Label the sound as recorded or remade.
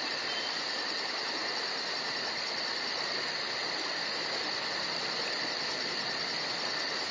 recorded